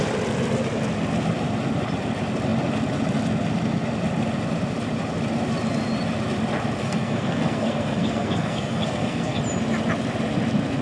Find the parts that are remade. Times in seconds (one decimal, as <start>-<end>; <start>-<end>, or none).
6.8-9.4